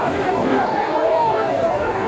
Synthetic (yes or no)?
yes